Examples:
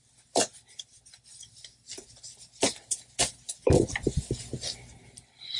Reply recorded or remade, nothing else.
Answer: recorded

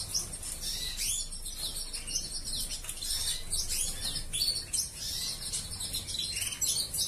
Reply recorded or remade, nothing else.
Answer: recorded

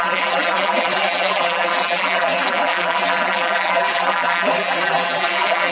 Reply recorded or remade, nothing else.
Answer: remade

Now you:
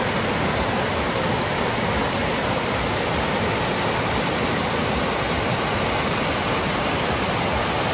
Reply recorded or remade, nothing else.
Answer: recorded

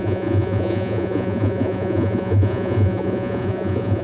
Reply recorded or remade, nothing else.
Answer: remade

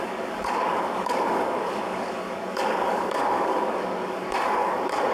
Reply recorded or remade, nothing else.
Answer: remade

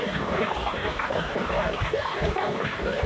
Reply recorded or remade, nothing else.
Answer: remade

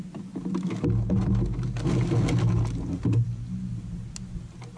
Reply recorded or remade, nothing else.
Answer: recorded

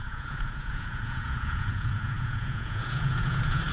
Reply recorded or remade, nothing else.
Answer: remade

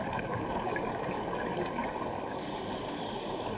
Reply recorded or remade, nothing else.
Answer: remade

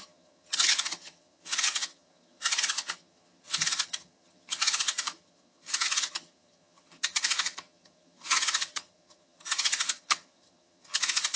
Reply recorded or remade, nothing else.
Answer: remade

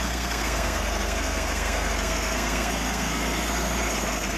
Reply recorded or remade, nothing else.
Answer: remade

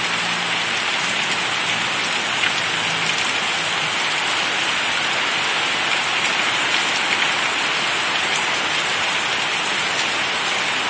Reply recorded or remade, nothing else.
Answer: recorded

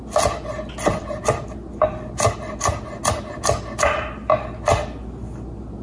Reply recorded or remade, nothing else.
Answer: recorded